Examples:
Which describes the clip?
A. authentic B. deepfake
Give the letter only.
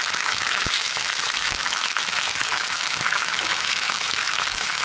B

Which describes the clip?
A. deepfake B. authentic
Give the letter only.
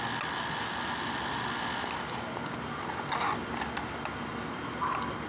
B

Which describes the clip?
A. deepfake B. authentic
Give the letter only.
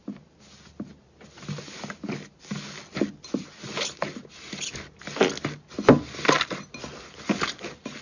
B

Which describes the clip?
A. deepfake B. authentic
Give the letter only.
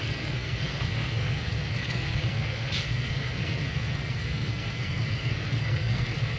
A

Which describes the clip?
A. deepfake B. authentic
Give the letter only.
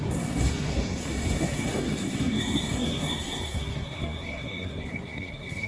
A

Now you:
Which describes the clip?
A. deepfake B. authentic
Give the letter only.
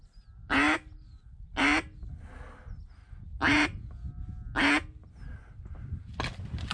B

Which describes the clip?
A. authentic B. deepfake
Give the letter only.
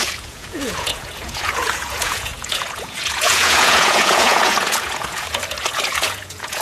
B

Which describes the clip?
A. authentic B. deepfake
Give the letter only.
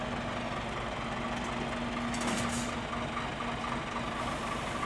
A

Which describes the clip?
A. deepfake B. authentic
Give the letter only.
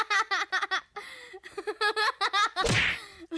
B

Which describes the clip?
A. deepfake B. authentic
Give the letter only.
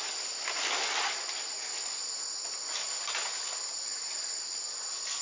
B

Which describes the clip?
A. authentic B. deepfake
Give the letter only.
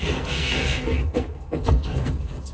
B